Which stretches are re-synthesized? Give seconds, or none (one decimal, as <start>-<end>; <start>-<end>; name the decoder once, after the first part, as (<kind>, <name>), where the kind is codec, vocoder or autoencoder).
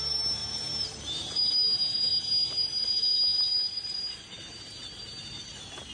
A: 0.4-1.5 (vocoder, BigVGAN v2)